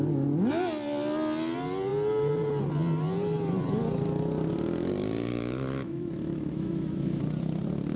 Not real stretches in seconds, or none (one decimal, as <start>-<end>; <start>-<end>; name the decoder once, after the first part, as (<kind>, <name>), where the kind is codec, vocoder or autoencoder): 5.3-7.2 (autoencoder, DAC-VAE)